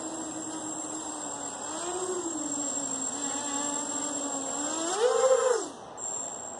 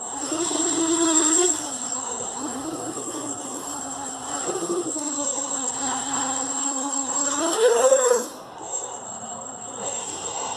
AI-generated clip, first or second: second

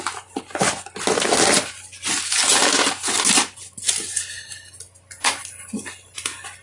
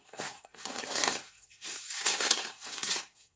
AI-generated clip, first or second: second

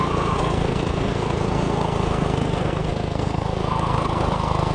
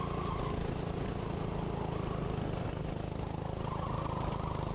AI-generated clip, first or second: first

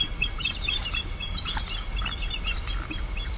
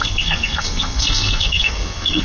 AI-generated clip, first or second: second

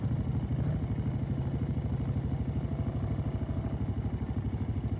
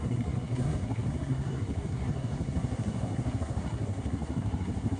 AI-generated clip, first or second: second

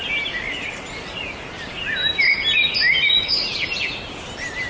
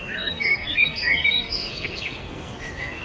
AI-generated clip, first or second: second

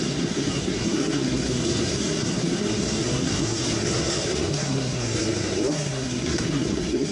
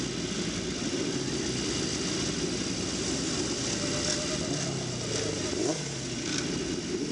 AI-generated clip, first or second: first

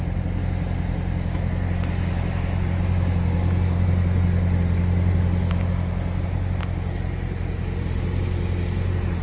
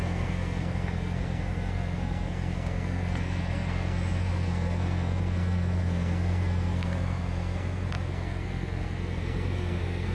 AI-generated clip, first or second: second